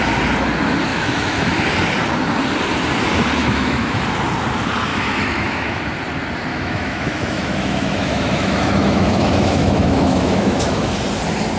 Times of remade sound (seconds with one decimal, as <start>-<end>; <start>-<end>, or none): 0.9-1.6; 3.4-4.0; 4.9-5.8; 6.5-11.0